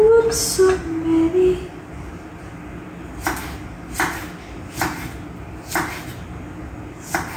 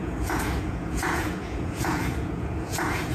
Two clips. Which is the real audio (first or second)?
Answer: first